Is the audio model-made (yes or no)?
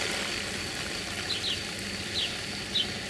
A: no